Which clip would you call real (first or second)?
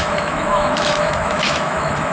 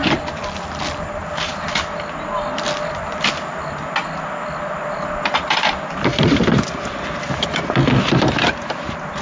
second